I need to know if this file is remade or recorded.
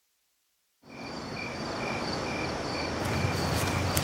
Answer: recorded